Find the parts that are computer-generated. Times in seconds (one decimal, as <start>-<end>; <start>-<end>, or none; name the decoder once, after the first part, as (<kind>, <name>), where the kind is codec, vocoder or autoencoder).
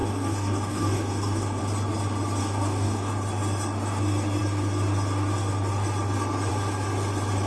0.0-1.6 (codec, DAC); 2.4-3.1